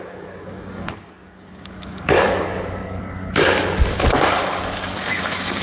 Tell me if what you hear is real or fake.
fake